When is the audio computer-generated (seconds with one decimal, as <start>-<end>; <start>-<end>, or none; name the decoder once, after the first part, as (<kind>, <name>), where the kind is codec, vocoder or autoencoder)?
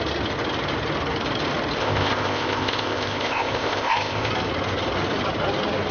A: 1.8-4.3 (codec, ZipCodec)